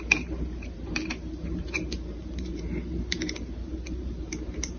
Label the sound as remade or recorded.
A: remade